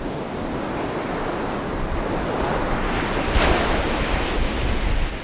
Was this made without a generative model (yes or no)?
yes